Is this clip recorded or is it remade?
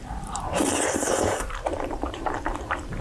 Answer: remade